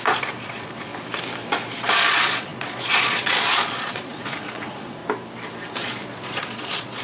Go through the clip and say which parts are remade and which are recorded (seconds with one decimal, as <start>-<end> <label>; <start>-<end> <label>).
0.0-0.9 remade; 0.9-1.7 recorded; 1.7-5.0 remade; 5.0-5.7 recorded; 5.7-7.0 remade